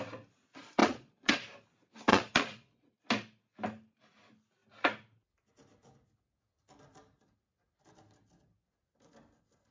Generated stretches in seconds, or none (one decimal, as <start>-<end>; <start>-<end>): 0.8-1.4; 2.1-3.0